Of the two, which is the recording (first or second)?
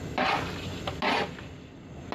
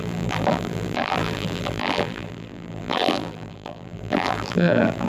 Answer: first